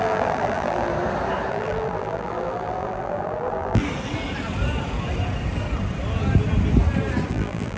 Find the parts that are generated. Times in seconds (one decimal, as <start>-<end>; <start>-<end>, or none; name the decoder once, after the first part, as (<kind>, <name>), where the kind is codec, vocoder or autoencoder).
0.0-0.9 (vocoder, BigVGAN v2); 1.5-3.8; 7.3-7.8